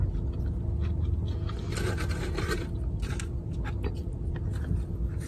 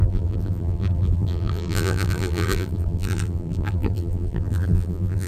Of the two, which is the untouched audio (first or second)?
first